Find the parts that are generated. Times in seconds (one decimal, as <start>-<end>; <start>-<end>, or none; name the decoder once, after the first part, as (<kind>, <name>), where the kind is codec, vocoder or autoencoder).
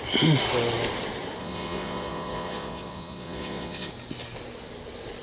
1.4-3.9 (vocoder, Vocos)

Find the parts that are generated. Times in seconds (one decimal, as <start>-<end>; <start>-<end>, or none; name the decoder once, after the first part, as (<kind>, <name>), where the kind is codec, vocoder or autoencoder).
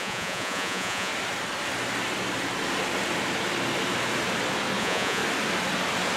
0.0-1.1 (vocoder, Vocos); 4.8-5.2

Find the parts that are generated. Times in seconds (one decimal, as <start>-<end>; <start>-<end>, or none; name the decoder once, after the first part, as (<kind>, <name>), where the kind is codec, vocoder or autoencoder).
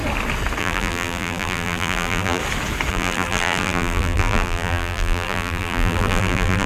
0.6-2.4 (vocoder, BigVGAN v2); 2.9-6.7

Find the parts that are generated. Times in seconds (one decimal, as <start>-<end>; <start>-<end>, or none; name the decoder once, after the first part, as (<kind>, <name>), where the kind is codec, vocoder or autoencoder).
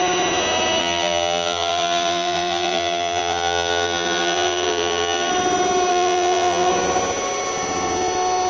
0.8-5.3 (vocoder, BigVGAN v2); 5.9-6.7